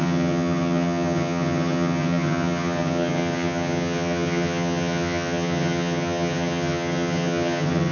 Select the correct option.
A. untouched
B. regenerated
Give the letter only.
B